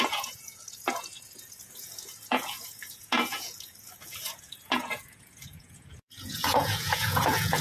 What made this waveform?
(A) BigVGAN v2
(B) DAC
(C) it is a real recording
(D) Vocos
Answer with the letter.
D